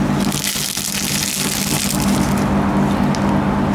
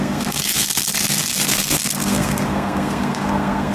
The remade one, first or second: second